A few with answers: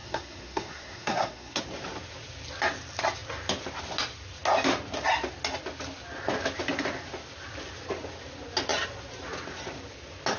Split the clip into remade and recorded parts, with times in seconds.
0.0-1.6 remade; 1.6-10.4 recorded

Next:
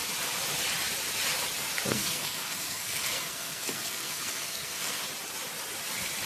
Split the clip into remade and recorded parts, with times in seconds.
0.0-1.9 recorded; 1.9-5.0 remade; 5.0-6.3 recorded

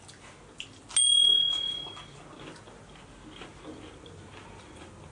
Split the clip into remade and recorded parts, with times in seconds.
0.0-5.1 recorded